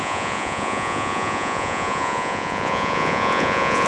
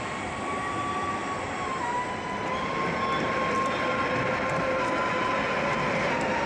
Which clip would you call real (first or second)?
second